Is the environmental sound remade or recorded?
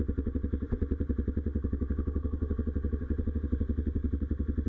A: remade